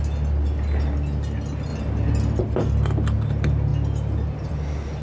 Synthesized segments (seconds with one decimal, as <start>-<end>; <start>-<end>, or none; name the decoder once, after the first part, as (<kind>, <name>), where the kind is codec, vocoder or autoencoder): 1.7-2.4 (vocoder, BigVGAN v2)